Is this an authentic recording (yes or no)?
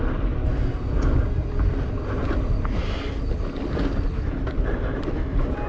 yes